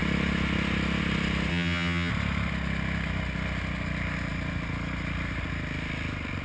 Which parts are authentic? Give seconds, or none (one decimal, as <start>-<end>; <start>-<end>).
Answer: 0.0-1.5; 2.1-6.4